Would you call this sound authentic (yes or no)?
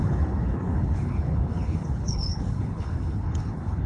no